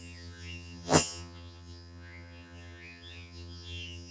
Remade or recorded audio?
remade